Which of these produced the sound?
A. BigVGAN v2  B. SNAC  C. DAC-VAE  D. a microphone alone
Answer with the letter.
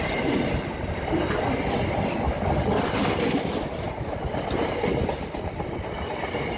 D